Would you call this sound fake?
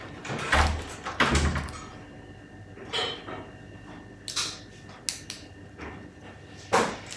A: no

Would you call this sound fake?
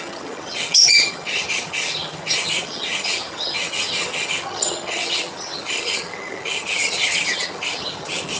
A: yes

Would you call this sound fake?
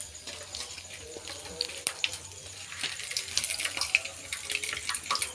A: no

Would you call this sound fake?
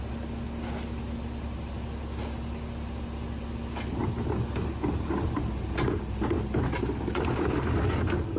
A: no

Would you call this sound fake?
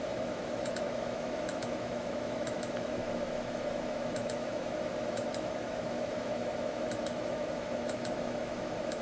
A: yes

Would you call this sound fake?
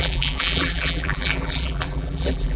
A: yes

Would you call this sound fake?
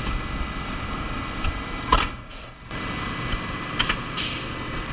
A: no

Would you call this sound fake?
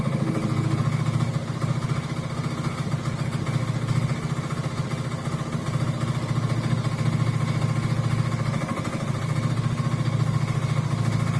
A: no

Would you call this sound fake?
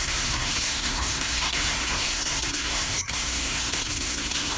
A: yes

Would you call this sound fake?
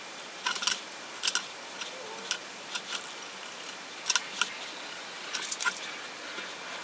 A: no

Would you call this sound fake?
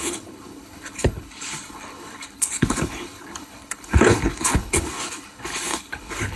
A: yes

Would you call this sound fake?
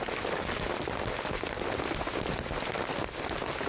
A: no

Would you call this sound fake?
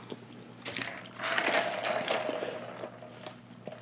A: no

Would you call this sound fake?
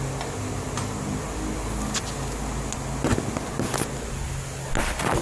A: no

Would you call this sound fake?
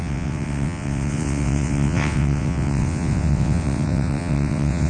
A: yes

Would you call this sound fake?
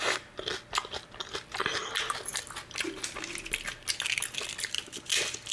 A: no